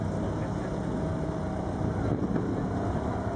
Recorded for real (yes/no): yes